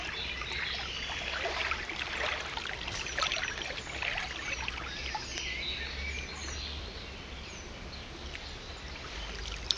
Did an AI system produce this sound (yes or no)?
no